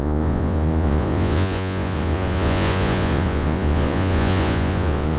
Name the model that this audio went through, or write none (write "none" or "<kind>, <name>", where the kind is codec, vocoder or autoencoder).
vocoder, Vocos